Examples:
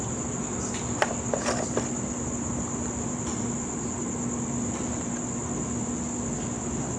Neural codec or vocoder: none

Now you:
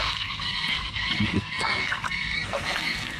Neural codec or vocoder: codec, SNAC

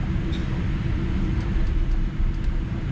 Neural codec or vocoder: none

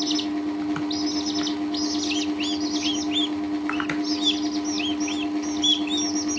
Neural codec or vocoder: none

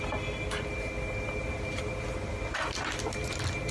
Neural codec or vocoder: none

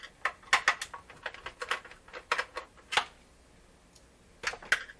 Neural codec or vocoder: none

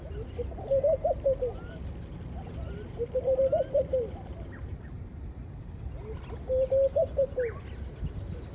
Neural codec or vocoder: none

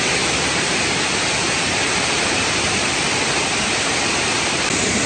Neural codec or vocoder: none